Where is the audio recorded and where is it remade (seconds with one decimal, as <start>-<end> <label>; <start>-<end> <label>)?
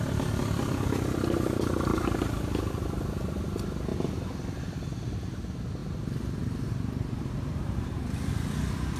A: 0.0-5.8 recorded; 5.8-8.3 remade; 8.3-9.0 recorded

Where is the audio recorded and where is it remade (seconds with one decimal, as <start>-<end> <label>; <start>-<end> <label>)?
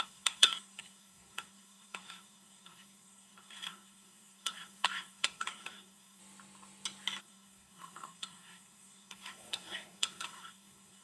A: 0.0-6.2 remade; 6.2-7.2 recorded; 7.2-11.0 remade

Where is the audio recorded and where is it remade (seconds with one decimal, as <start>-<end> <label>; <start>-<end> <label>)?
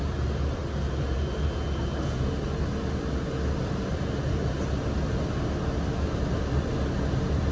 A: 0.0-7.5 recorded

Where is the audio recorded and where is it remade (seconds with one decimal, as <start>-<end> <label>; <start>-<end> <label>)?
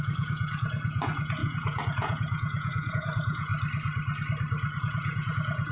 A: 0.0-3.5 remade; 3.5-4.8 recorded; 4.8-5.7 remade